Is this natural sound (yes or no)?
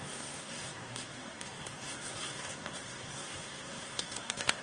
no